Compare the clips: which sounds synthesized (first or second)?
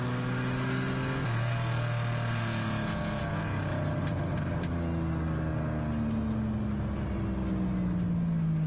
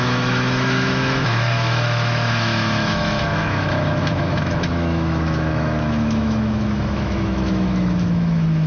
second